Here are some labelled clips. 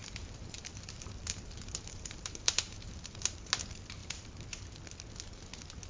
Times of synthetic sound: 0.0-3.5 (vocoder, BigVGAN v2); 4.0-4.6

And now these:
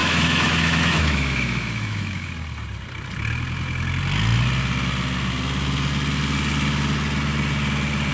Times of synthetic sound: 0.0-2.3 (autoencoder, DAC-VAE)

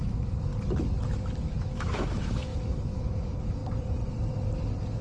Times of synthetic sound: 0.0-0.5 (autoencoder, DAC-VAE); 1.4-3.6

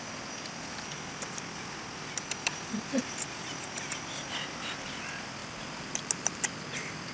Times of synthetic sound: 5.4-6.5 (vocoder, BigVGAN v2)

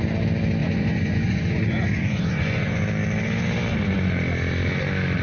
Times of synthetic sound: 0.6-2.8 (vocoder, Vocos)

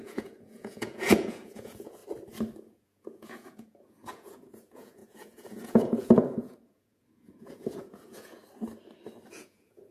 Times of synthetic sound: 0.0-2.0 (vocoder, Vocos); 2.6-8.4; 9.3-9.9

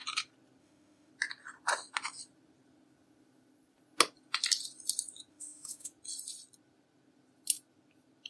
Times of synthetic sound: 0.6-1.1 (autoencoder, DAC-VAE); 5.3-5.9